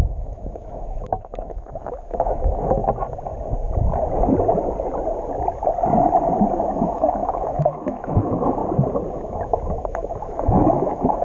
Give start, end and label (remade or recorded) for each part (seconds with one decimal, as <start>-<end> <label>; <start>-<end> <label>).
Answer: 0.0-2.8 remade; 2.8-6.6 recorded; 6.6-8.6 remade; 8.6-9.1 recorded; 9.1-11.2 remade